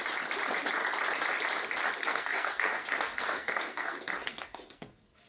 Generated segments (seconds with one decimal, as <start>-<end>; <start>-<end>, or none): 2.0-5.3